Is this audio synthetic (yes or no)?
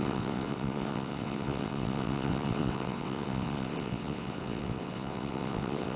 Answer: yes